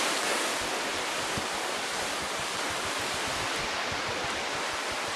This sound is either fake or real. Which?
real